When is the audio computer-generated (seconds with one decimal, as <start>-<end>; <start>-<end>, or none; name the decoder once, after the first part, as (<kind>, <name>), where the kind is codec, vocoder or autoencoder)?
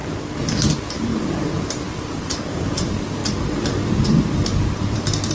0.6-1.1 (vocoder, BigVGAN v2); 1.9-3.2; 4.0-5.3